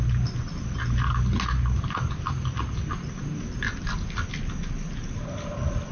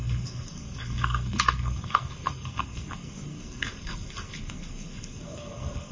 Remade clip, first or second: second